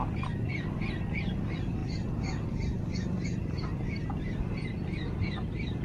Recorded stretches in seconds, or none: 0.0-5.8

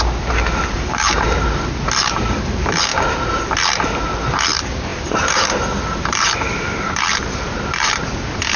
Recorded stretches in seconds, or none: 0.0-0.7; 2.9-4.3

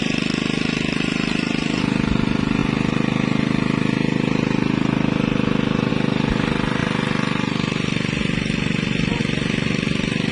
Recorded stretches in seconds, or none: 0.0-10.3

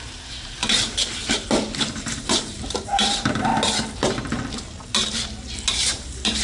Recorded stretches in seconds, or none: 0.6-1.8; 3.5-5.7

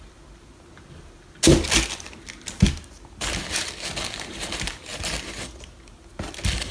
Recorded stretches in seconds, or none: 0.0-6.7